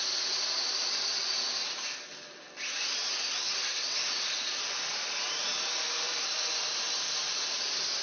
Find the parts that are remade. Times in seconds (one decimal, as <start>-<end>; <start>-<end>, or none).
none